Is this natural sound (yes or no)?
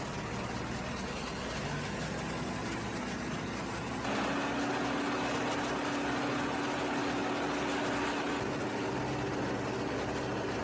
yes